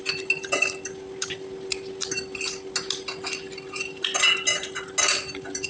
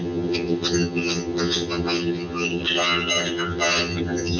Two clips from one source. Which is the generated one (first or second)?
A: second